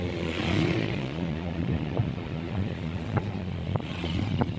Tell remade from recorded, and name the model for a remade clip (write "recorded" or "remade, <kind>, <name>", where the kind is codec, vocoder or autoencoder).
remade, vocoder, Vocos